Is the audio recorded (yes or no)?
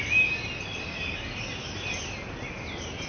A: yes